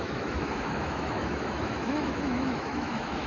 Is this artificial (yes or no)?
yes